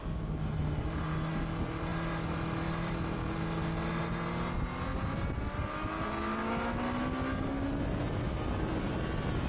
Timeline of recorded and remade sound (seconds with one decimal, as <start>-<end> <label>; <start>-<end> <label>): 0.0-9.5 recorded